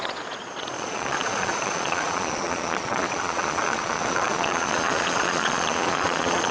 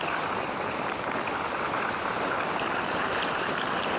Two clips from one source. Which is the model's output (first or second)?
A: first